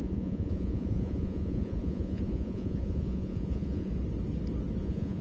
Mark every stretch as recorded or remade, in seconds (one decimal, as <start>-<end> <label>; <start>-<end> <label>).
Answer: 0.0-3.9 remade; 3.9-4.8 recorded; 4.8-5.2 remade